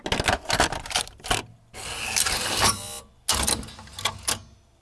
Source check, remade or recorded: recorded